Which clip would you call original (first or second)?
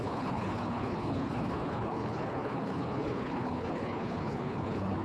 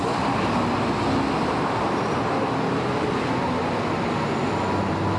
second